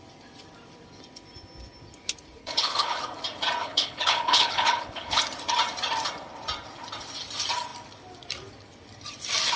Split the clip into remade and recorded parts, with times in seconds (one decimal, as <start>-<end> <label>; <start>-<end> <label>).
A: 0.0-2.4 recorded; 2.4-3.0 remade; 3.0-3.6 recorded; 3.6-5.2 remade; 5.2-9.6 recorded